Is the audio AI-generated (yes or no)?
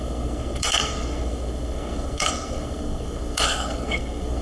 yes